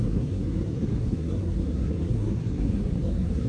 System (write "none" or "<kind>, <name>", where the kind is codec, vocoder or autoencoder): codec, SNAC